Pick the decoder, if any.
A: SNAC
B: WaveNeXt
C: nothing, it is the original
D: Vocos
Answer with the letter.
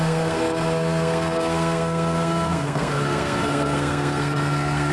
A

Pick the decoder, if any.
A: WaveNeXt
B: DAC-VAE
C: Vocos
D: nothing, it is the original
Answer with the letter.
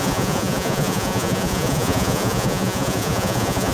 C